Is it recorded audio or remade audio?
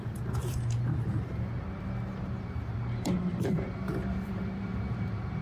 remade